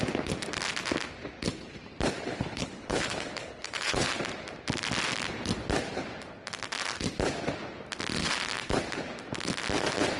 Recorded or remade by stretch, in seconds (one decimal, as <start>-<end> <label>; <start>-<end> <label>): 0.0-2.3 recorded; 2.3-4.1 remade; 4.1-10.2 recorded